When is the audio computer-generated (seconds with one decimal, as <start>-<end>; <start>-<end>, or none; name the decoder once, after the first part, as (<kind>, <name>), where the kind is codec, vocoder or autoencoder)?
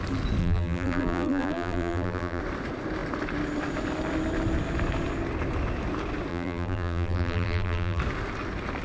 0.4-2.4 (vocoder, BigVGAN v2); 6.3-8.0